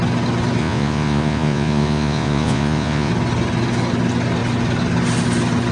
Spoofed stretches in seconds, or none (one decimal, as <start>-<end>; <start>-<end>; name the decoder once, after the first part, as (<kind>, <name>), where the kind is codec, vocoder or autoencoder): 0.6-3.1 (vocoder, Vocos)